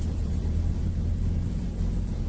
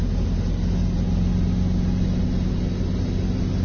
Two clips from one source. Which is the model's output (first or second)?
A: first